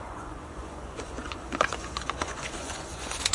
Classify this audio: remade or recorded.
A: remade